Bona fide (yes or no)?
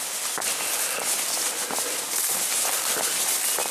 yes